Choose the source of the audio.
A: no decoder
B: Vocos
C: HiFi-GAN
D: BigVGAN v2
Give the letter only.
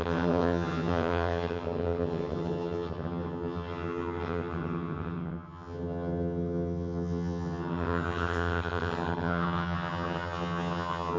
C